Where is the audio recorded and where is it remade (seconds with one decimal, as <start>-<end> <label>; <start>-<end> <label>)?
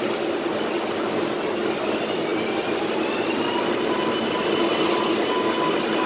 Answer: 0.0-6.1 recorded